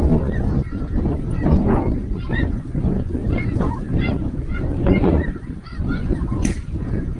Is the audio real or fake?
fake